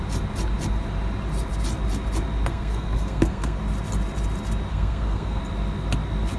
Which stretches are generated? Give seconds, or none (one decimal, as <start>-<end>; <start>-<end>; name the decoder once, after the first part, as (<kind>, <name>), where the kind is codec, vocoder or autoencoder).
2.5-3.6 (codec, SNAC); 4.7-5.4